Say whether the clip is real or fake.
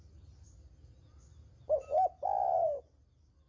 real